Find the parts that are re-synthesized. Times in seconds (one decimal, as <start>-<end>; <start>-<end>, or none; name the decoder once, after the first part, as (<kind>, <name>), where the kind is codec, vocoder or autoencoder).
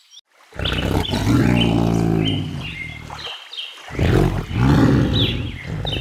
none